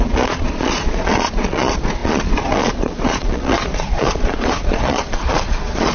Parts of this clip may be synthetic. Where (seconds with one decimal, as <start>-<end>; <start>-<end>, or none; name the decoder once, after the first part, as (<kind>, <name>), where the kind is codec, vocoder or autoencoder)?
0.0-5.9 (vocoder, Vocos)

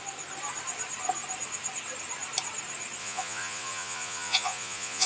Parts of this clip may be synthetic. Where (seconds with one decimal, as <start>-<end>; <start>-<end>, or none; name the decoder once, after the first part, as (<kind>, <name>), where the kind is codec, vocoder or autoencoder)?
3.0-5.1 (vocoder, Vocos)

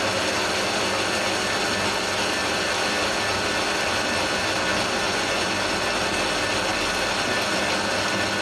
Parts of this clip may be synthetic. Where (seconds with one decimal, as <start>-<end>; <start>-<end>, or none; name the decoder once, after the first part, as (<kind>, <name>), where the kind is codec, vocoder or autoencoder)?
5.0-5.5 (vocoder, Vocos)

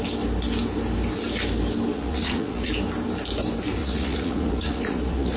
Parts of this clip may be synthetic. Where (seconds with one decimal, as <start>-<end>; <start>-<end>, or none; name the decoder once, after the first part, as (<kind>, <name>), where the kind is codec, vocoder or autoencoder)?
1.9-2.7 (vocoder, Vocos); 3.8-5.4